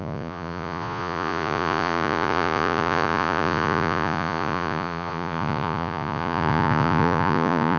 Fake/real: fake